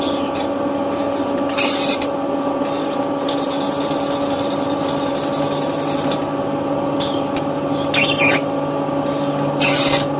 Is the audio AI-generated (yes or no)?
no